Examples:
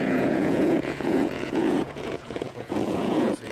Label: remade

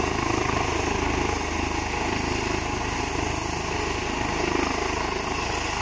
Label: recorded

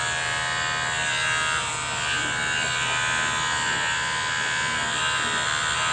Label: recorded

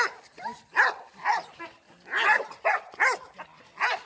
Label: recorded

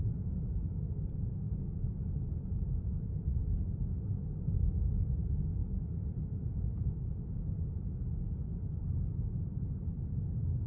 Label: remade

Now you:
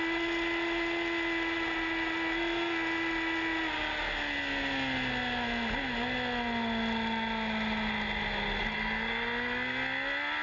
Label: recorded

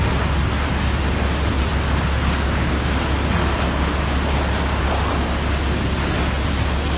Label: recorded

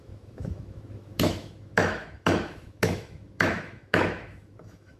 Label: remade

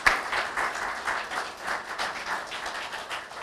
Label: recorded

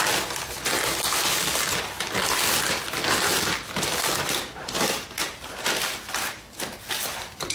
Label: recorded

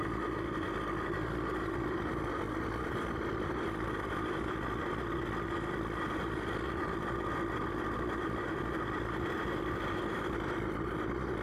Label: recorded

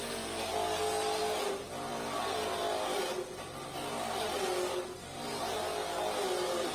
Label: recorded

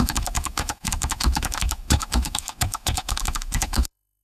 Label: remade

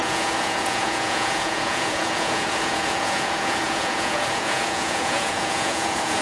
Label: remade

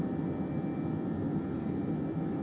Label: recorded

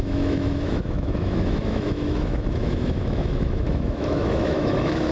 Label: remade